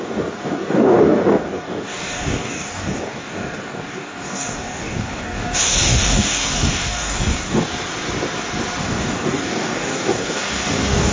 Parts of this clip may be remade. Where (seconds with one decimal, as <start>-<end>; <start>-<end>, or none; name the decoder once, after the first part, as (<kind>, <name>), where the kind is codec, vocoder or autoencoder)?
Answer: 0.0-7.7 (codec, DAC); 8.8-11.1